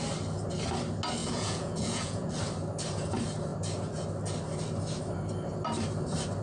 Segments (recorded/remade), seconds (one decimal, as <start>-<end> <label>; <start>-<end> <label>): 0.0-1.2 recorded; 1.2-2.3 remade; 2.3-6.4 recorded